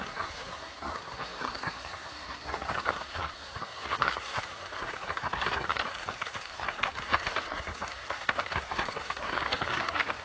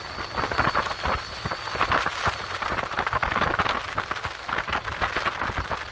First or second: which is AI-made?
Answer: first